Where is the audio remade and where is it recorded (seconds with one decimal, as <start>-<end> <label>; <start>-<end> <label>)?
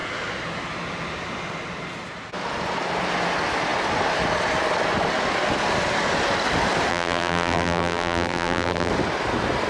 0.0-6.9 recorded; 6.9-8.9 remade; 8.9-9.7 recorded